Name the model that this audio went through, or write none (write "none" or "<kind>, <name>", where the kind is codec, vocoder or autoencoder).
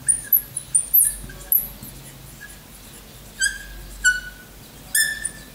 none